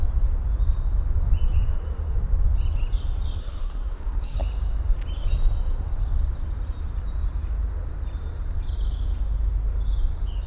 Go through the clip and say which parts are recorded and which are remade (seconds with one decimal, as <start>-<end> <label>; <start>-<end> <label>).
0.0-3.4 recorded; 3.4-4.4 remade; 4.4-10.5 recorded